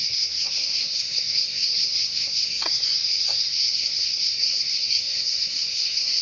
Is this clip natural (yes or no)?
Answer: no